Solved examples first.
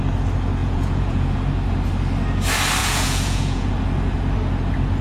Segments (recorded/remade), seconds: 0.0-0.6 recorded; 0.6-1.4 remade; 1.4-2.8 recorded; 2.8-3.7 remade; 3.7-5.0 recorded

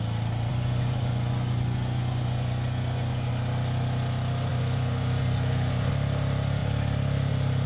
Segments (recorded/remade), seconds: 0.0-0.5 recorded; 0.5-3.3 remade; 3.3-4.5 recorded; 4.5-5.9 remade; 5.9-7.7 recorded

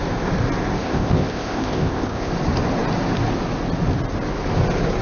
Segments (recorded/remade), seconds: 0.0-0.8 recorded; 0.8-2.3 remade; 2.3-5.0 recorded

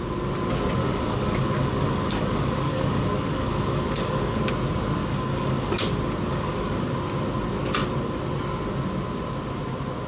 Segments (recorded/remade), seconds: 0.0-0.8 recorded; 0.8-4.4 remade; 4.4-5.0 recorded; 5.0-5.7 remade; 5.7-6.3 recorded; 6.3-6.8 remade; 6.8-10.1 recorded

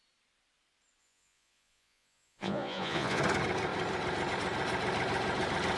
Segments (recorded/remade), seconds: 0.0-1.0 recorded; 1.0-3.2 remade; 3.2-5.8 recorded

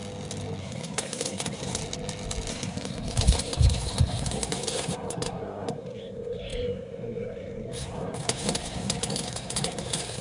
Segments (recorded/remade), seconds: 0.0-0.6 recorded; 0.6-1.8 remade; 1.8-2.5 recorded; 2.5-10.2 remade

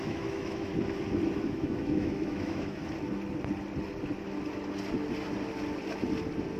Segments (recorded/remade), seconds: 0.0-0.7 remade; 0.7-1.5 recorded; 1.5-2.8 remade; 2.8-6.6 recorded

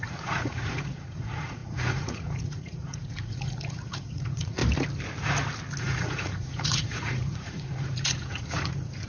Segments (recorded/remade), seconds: 0.0-4.6 remade; 4.6-5.8 recorded; 5.8-9.1 remade